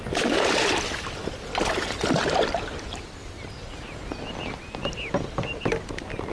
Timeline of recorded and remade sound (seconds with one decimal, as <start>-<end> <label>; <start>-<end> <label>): 0.0-6.3 recorded